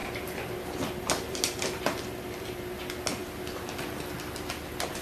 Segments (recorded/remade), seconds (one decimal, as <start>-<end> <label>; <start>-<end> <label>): 0.0-5.0 recorded